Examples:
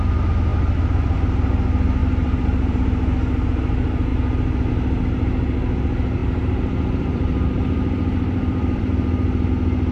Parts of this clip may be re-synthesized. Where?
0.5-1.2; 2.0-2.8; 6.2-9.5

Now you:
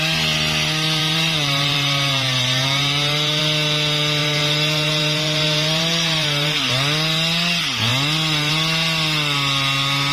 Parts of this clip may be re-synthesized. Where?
1.0-3.4; 4.2-6.7

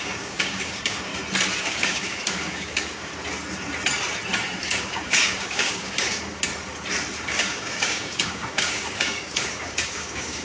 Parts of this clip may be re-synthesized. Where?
0.0-1.1; 1.6-3.1; 4.6-6.5; 7.2-10.4

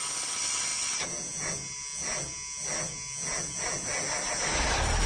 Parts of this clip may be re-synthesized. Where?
none

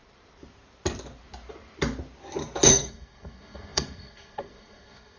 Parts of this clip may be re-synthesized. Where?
2.7-5.2